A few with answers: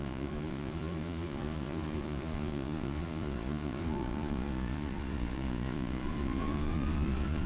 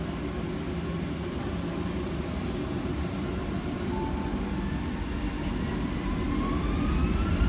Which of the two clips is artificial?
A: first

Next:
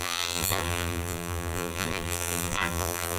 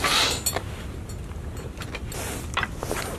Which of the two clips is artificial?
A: first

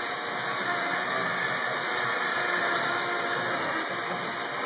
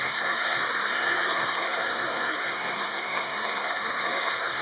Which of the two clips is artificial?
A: second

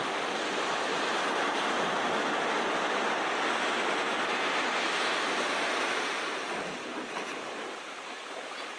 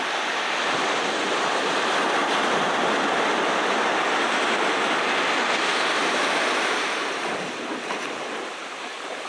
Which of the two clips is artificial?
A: second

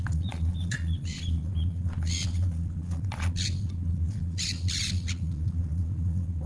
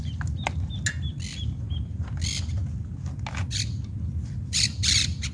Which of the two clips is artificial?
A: first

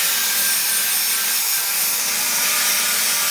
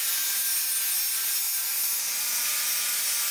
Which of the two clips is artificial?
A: first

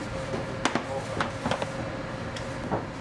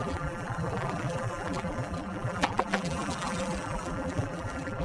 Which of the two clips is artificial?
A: second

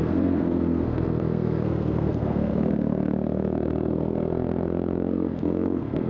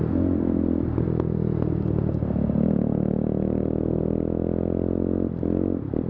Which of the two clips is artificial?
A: first